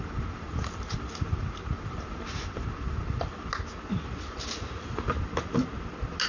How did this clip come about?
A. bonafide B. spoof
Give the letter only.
A